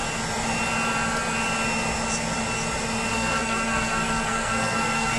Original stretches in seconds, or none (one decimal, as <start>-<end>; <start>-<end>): 0.0-3.1